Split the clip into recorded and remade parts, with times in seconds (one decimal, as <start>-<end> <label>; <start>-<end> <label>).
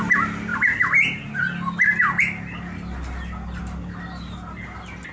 0.0-5.1 recorded